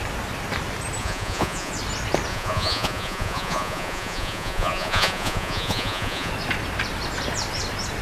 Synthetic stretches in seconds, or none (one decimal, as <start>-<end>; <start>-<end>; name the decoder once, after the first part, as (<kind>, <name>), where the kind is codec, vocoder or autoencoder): 1.0-1.7 (vocoder, Vocos); 2.3-6.3